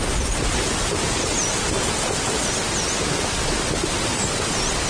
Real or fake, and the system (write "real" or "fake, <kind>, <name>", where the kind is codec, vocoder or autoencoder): real